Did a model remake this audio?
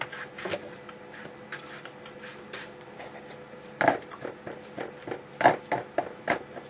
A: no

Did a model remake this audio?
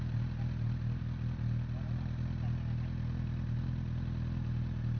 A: no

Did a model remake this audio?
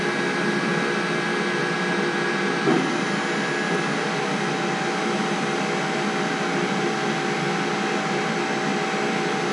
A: no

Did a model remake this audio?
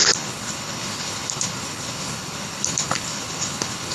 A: yes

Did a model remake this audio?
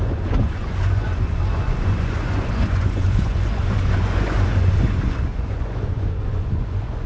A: yes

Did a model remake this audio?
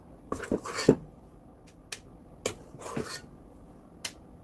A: no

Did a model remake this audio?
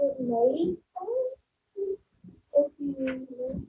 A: no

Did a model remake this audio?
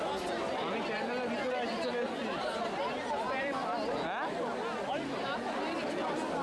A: no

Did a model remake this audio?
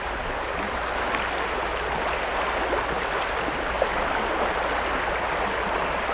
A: no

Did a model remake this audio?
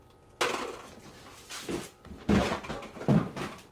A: no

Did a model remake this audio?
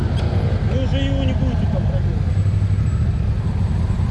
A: no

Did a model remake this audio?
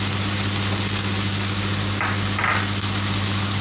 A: no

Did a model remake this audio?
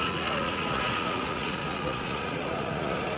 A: yes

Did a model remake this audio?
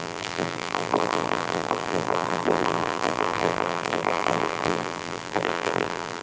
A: yes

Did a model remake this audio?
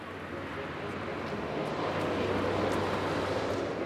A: no